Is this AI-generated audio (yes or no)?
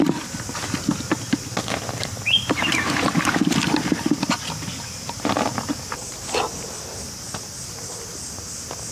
no